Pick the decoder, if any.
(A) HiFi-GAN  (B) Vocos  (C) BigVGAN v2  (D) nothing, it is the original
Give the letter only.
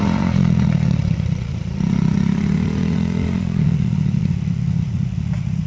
B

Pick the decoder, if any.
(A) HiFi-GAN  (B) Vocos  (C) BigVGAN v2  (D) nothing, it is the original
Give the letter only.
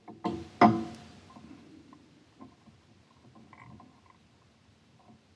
D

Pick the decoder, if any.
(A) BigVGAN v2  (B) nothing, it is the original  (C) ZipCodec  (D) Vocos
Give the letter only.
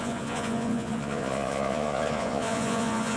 D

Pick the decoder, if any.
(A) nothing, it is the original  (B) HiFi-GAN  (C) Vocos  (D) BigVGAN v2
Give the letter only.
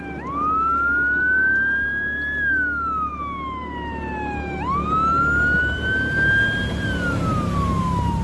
A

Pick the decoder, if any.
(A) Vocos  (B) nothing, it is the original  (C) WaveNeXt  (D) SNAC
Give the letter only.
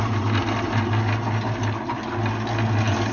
B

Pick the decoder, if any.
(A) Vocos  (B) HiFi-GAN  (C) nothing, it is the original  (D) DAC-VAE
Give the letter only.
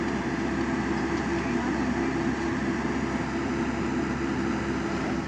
C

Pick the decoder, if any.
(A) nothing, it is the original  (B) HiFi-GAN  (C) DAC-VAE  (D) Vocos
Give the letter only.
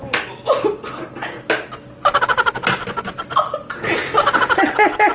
A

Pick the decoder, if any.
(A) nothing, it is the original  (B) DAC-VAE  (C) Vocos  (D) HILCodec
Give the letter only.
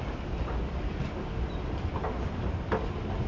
A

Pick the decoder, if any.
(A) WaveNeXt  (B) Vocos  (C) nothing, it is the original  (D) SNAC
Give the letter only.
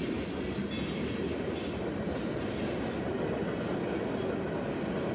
C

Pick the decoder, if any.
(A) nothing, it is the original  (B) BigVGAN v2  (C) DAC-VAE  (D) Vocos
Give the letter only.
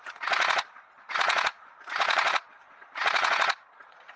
D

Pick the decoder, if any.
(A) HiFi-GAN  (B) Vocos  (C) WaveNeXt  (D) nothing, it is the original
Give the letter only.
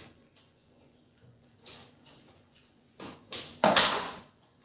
B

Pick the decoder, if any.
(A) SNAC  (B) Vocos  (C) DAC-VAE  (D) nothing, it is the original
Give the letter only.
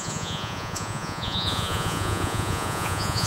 B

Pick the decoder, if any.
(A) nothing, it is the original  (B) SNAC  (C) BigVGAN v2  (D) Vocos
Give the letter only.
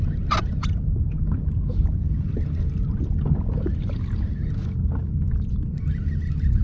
A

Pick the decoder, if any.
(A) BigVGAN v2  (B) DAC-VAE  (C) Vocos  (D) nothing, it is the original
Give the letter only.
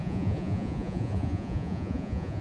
C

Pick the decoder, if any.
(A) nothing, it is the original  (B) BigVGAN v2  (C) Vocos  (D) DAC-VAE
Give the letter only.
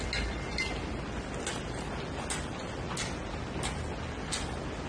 A